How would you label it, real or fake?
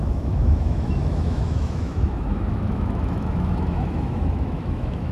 fake